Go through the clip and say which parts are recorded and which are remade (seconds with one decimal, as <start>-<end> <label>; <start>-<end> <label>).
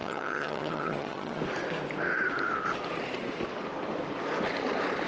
0.0-1.4 remade; 1.4-5.1 recorded